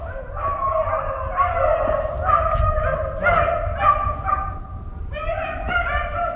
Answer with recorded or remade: recorded